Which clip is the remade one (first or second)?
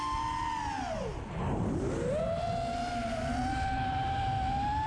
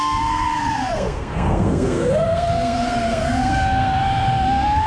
second